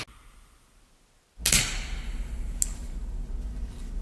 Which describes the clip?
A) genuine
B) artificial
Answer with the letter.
A